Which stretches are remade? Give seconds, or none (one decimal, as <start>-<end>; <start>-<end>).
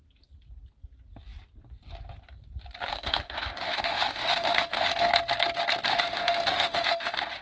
2.9-5.1; 5.9-7.4